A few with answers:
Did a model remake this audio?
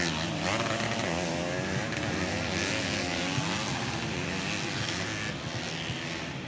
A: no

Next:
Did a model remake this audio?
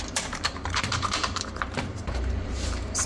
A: yes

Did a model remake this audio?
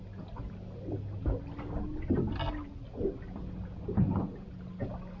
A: no